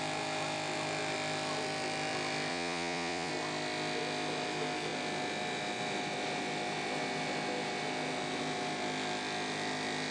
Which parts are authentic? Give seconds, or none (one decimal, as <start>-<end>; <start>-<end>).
0.0-2.5; 3.3-10.1